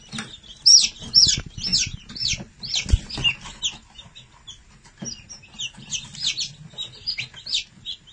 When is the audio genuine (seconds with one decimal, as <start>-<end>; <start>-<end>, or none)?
0.0-1.7; 2.5-8.1